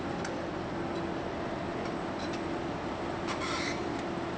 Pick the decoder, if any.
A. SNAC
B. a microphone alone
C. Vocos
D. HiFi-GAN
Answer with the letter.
B